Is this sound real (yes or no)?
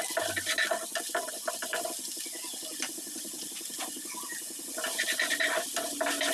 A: yes